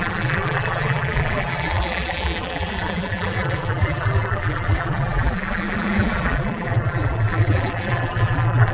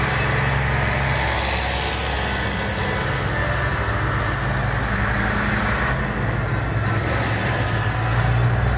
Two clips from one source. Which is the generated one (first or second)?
first